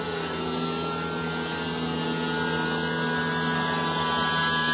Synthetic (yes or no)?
no